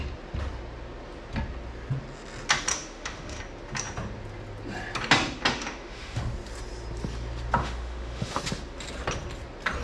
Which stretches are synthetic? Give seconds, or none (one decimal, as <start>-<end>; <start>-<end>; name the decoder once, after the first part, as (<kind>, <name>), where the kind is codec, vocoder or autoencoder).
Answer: 2.7-3.4 (autoencoder, DAC-VAE); 5.5-6.2; 7.6-8.4